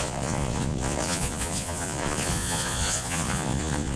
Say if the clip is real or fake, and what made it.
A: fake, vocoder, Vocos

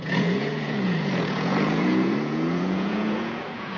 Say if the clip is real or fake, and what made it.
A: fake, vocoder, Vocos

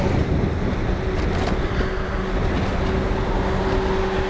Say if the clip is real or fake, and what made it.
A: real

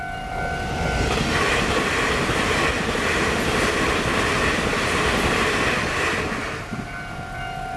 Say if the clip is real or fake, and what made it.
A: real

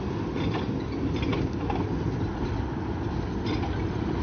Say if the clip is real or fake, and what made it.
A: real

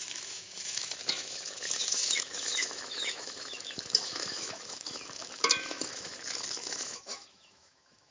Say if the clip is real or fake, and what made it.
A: fake, autoencoder, DAC-VAE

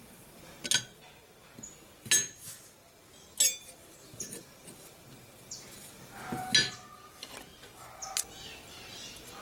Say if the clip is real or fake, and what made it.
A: real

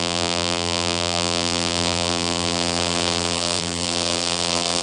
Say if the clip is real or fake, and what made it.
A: fake, vocoder, BigVGAN v2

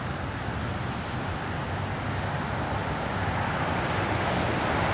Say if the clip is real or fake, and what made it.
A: real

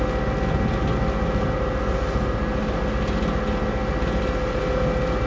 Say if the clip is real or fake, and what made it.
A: real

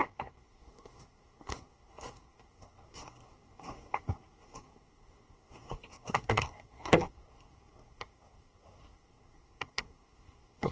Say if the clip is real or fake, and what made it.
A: fake, codec, SNAC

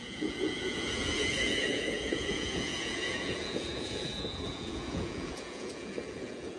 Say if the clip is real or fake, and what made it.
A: fake, vocoder, Vocos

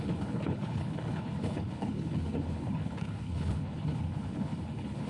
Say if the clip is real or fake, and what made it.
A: fake, codec, HILCodec